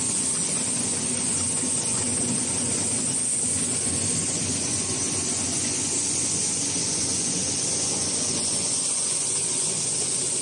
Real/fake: fake